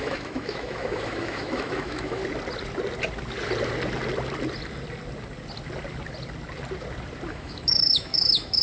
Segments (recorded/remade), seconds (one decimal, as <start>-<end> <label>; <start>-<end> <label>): 0.0-2.2 remade; 2.2-7.3 recorded; 7.3-8.6 remade